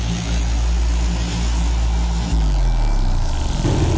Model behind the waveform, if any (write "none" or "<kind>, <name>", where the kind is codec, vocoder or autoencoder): none